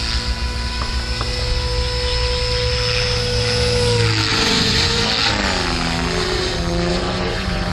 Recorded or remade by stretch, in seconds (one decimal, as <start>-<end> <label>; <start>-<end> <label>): 0.0-4.3 recorded; 4.3-5.0 remade; 5.0-6.9 recorded; 6.9-7.7 remade